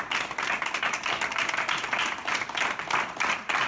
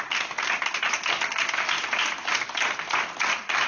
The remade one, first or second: first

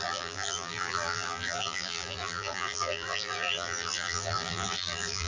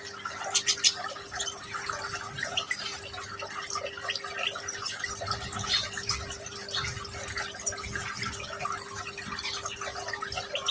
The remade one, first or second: first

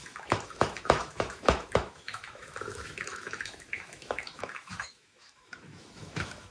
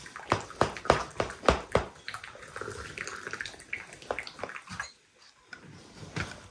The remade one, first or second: first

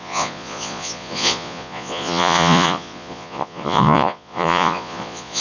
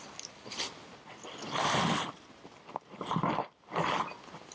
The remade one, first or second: first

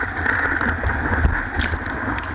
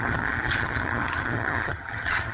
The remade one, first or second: second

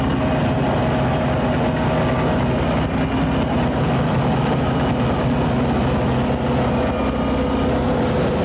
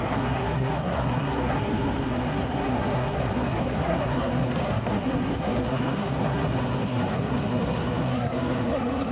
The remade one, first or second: second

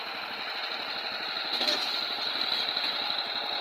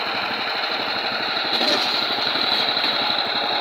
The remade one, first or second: second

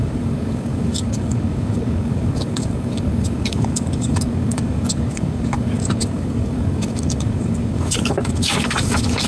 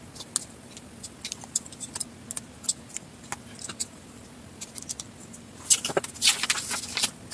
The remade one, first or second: first